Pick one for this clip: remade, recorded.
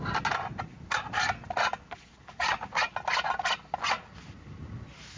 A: recorded